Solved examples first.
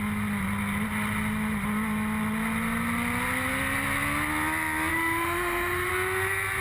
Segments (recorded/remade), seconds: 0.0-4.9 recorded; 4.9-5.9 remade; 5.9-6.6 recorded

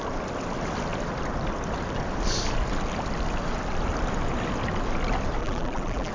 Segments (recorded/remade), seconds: 0.0-5.4 recorded; 5.4-6.1 remade

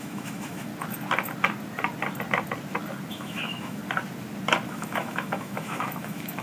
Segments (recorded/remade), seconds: 0.0-0.7 remade; 0.7-3.1 recorded; 3.1-3.8 remade; 3.8-4.7 recorded; 4.7-6.4 remade

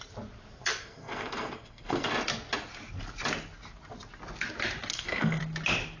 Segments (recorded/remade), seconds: 0.0-0.8 recorded; 0.8-2.1 remade; 2.1-4.9 recorded; 4.9-5.4 remade; 5.4-6.0 recorded

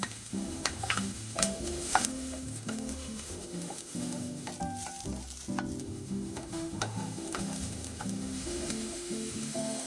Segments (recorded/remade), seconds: 0.0-4.5 remade; 4.5-5.8 recorded; 5.8-9.9 remade

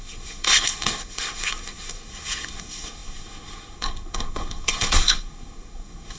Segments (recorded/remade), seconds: 0.0-6.2 remade

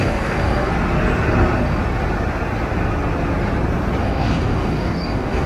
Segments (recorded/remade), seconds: 0.0-0.7 remade; 0.7-4.0 recorded; 4.0-5.5 remade

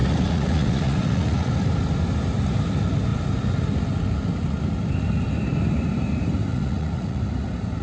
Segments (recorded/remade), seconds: 0.0-1.5 remade; 1.5-6.5 recorded; 6.5-7.2 remade; 7.2-7.8 recorded